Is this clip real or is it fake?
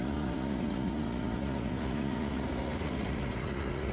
fake